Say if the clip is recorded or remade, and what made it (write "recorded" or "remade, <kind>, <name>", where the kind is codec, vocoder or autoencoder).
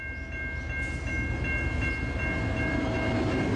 recorded